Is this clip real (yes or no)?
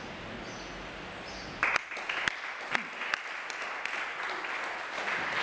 yes